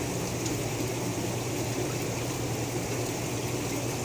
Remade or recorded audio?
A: recorded